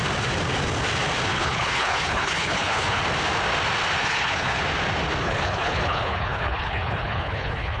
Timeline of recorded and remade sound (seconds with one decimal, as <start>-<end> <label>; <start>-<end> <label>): 0.0-1.3 recorded; 1.3-3.0 remade; 3.0-4.0 recorded; 4.0-4.6 remade; 4.6-5.2 recorded; 5.2-7.8 remade